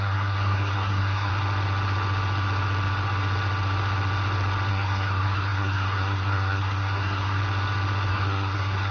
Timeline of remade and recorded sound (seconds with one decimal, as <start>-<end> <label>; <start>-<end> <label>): 0.0-1.3 remade; 1.3-4.7 recorded; 4.7-7.4 remade; 7.4-8.1 recorded; 8.1-8.9 remade